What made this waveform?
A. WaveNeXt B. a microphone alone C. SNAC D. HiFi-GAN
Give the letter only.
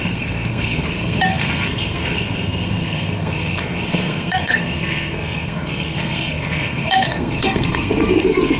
C